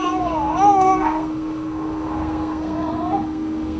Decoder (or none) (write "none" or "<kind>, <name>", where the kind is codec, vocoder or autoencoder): codec, SNAC